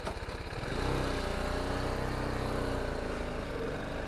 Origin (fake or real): real